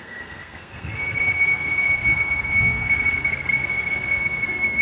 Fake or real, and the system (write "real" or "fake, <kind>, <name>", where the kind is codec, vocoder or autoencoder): fake, codec, SNAC